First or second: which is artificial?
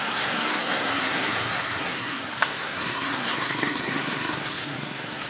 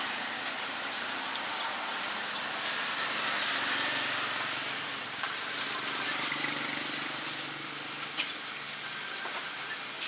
first